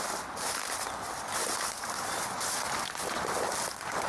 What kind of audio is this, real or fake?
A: real